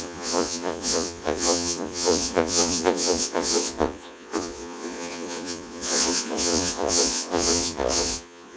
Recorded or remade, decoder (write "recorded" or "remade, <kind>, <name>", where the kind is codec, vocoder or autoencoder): remade, vocoder, Vocos